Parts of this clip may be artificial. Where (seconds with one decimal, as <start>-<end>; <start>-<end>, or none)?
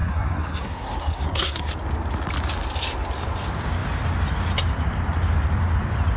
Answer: 0.0-1.7